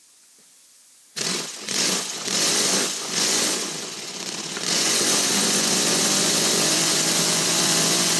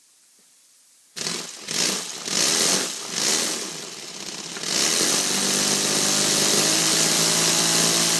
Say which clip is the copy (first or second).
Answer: first